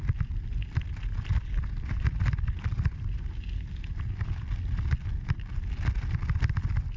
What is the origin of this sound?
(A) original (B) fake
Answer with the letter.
A